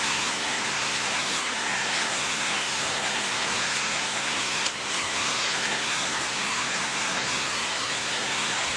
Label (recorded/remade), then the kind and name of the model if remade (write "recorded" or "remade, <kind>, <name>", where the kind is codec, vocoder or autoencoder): remade, codec, SNAC